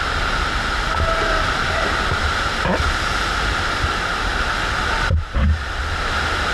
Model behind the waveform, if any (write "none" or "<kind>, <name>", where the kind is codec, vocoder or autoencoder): none